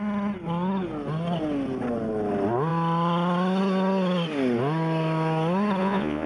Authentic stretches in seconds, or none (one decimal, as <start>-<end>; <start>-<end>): 0.0-5.8